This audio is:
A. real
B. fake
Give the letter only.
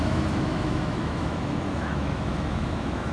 B